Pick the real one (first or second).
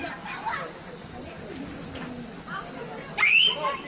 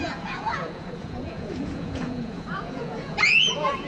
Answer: first